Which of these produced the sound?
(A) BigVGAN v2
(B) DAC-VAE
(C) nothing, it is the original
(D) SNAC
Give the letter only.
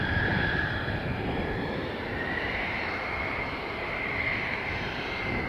A